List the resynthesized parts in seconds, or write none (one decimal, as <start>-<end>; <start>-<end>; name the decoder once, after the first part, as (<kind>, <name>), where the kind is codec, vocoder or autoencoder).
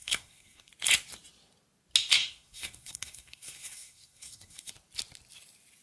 0.0-0.7 (codec, SNAC); 2.1-4.7